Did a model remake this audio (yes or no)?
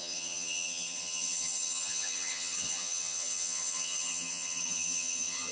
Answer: yes